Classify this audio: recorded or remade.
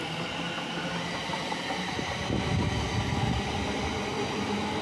recorded